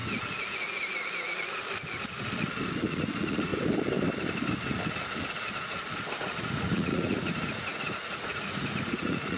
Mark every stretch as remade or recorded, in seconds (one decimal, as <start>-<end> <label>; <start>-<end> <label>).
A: 0.0-2.8 recorded; 2.8-3.5 remade; 3.5-6.2 recorded; 6.2-9.4 remade